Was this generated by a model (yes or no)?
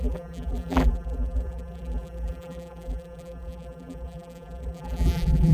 yes